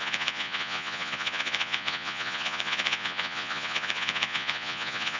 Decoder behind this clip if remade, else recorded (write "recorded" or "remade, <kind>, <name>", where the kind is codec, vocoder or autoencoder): remade, vocoder, Vocos